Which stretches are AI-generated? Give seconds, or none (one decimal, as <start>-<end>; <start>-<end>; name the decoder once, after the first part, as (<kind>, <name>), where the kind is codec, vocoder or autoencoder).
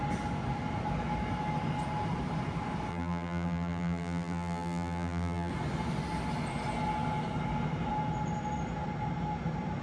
2.9-5.5 (vocoder, BigVGAN v2)